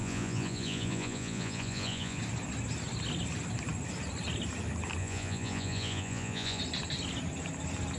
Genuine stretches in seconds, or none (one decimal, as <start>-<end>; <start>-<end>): 2.2-5.0; 6.6-8.0